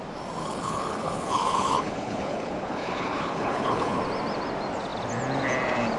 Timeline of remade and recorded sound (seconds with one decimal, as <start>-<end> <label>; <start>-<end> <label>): 0.0-0.4 recorded; 0.4-4.0 remade; 4.0-6.0 recorded